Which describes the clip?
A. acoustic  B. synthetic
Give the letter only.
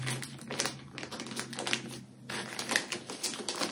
A